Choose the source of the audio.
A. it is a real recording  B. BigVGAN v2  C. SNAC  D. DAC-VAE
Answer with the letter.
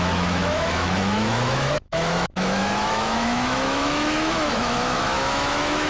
D